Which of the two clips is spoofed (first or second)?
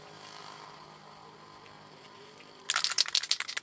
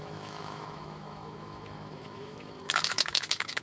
second